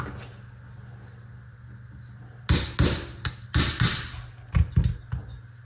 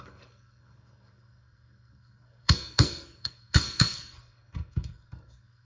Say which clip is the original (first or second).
first